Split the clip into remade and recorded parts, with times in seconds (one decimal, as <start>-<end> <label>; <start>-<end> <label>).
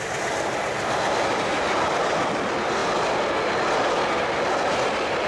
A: 0.0-5.3 recorded